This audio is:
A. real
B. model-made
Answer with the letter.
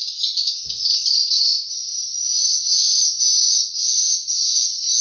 A